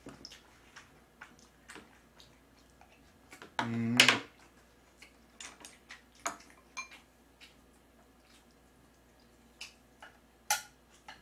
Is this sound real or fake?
real